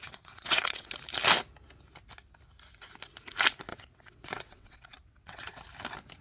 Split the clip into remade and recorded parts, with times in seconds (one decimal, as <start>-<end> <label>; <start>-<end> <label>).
0.0-0.9 remade; 0.9-3.7 recorded; 3.7-5.6 remade; 5.6-6.2 recorded